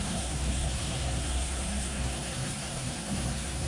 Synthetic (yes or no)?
yes